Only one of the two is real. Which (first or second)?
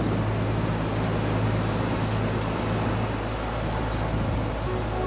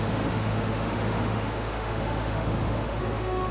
first